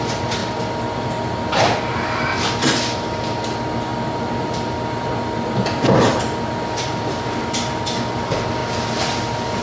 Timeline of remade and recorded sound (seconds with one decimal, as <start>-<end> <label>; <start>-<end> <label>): 0.0-9.6 recorded